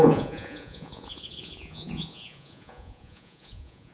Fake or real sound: fake